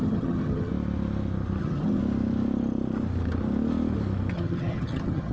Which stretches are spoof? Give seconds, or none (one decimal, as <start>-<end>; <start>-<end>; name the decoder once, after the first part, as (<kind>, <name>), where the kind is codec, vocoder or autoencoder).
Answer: 0.0-0.7 (vocoder, HiFi-GAN); 1.6-2.0; 4.3-5.3